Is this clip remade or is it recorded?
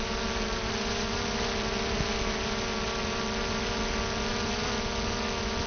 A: recorded